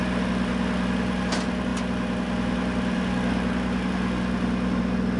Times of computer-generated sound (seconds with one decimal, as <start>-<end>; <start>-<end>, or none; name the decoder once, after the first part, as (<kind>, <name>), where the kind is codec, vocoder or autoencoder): none